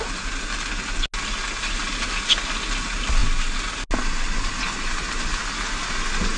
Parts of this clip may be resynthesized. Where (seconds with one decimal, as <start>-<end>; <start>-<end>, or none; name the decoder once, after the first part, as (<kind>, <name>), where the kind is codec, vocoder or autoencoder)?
none